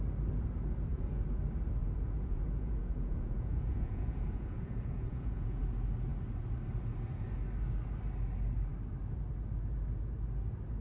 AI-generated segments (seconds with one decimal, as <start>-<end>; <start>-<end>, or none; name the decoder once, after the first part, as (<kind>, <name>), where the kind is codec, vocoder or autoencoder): 0.9-1.4 (vocoder, Vocos); 1.8-5.6